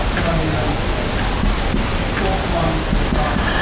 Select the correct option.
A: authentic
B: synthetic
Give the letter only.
A